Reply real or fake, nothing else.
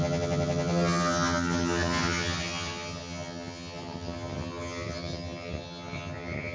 fake